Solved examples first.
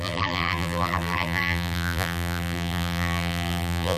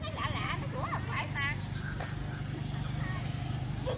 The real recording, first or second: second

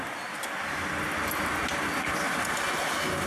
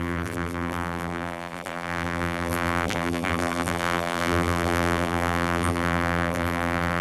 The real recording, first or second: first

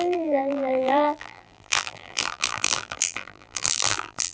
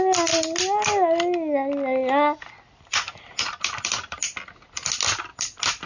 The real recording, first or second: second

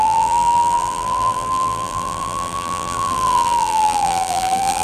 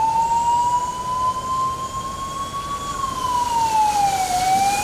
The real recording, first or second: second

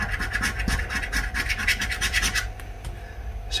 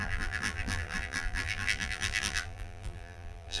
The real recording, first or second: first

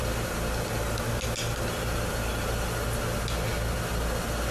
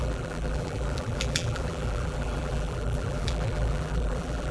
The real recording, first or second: first